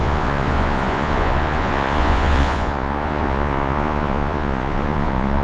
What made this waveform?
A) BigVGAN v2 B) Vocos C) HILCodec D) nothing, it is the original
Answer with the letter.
B